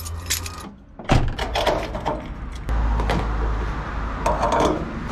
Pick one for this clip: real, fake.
real